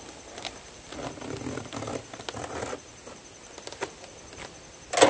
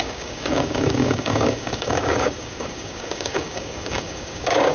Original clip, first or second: first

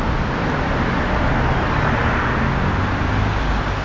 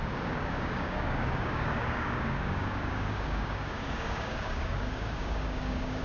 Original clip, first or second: first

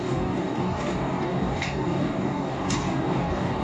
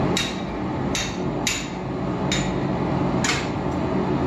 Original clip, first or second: second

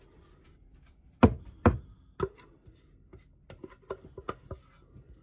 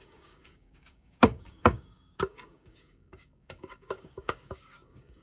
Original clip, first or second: first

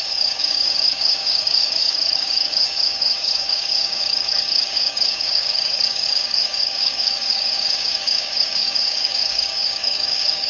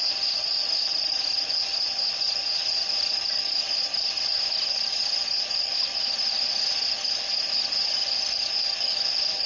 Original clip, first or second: second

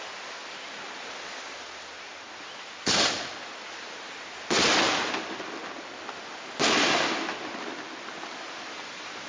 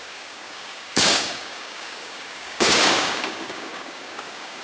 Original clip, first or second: first